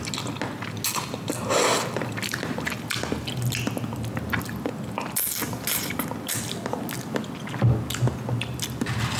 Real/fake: real